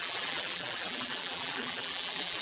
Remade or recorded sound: remade